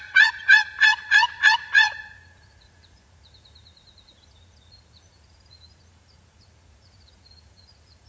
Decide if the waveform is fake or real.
fake